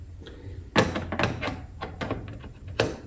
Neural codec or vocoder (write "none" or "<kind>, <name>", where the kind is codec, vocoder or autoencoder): none